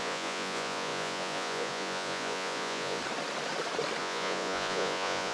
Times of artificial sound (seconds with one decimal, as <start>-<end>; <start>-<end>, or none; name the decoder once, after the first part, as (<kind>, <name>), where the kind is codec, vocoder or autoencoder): 0.0-3.0 (vocoder, Vocos); 4.0-5.3